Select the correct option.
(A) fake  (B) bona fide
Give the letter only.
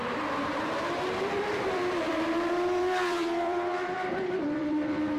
A